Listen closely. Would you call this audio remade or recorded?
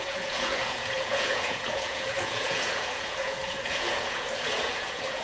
remade